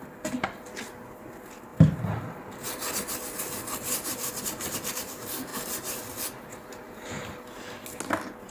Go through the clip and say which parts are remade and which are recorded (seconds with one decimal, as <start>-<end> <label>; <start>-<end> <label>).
0.0-8.5 recorded